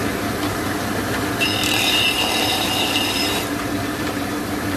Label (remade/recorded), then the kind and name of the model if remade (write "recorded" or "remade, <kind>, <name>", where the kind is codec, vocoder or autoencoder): remade, vocoder, BigVGAN v2